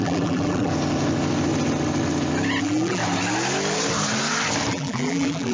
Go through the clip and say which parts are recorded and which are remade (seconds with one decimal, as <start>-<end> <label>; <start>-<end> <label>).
0.0-0.7 remade; 0.7-2.6 recorded; 2.6-3.0 remade; 3.0-4.7 recorded; 4.7-5.5 remade